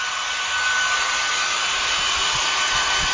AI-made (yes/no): no